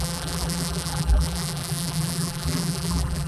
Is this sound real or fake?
fake